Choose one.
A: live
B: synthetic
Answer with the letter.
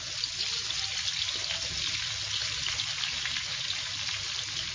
A